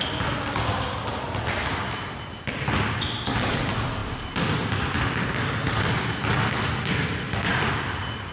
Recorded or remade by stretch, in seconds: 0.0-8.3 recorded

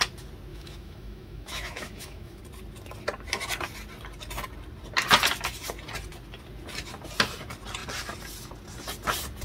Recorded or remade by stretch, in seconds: 0.0-0.5 recorded; 0.5-2.4 remade; 2.4-9.4 recorded

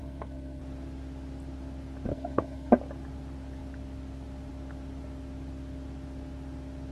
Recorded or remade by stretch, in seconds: 0.0-0.6 remade; 0.6-2.1 recorded; 2.1-2.7 remade; 2.7-6.9 recorded

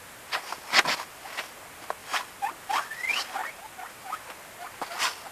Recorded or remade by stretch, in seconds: 0.0-2.0 recorded; 2.0-2.5 remade; 2.5-3.4 recorded; 3.4-3.9 remade; 3.9-5.3 recorded

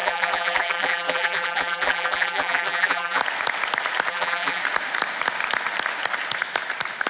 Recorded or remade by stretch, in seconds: 0.0-3.2 remade; 3.2-4.1 recorded; 4.1-4.6 remade; 4.6-7.1 recorded

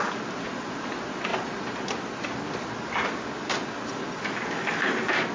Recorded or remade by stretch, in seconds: 0.0-5.3 recorded

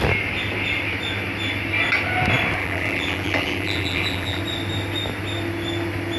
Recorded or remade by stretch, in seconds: 0.0-2.6 recorded; 2.6-4.4 remade; 4.4-6.2 recorded